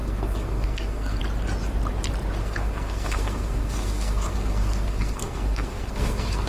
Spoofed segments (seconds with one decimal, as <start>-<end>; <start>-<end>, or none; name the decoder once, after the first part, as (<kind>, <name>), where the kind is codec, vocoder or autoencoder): 0.0-1.2 (codec, SNAC); 2.4-6.5